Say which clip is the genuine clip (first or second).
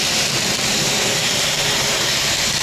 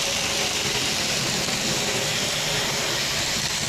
second